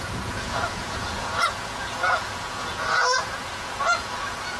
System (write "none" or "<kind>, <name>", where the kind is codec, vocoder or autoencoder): vocoder, Vocos